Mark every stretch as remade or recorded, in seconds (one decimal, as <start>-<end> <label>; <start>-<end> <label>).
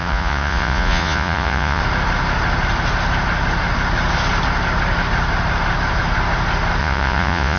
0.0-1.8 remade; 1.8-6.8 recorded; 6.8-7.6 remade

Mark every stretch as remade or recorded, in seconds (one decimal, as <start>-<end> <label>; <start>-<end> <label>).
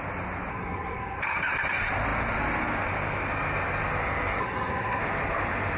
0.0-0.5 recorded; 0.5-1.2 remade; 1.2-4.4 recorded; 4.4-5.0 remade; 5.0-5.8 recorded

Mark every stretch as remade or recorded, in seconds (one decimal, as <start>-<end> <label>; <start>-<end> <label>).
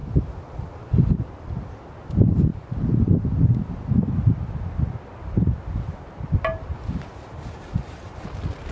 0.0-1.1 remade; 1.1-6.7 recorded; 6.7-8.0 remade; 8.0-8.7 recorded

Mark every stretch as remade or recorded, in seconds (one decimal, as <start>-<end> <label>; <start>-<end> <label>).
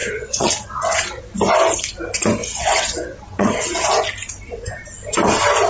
0.0-1.2 remade; 1.2-2.4 recorded; 2.4-3.9 remade; 3.9-5.7 recorded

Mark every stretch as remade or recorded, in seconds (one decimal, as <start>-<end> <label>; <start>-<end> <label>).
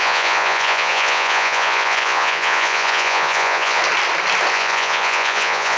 0.0-3.8 remade; 3.8-4.5 recorded; 4.5-5.8 remade